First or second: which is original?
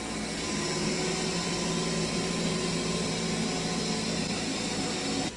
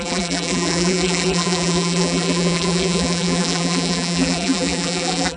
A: first